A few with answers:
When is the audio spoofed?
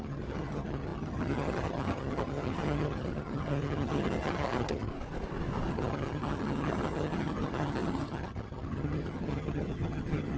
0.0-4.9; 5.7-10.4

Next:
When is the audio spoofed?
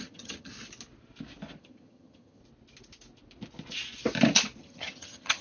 0.0-0.5; 1.6-2.4; 4.6-5.4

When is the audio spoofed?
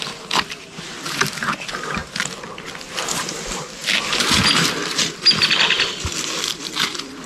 none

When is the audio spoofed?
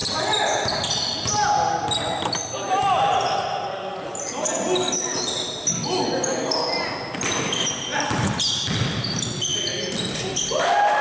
none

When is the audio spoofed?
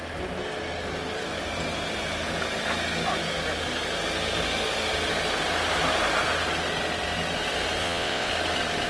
7.8-8.3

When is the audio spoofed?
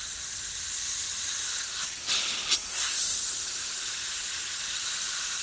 0.0-1.1; 1.8-4.1; 4.9-5.4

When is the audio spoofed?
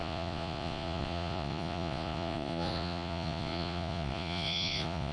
0.0-5.1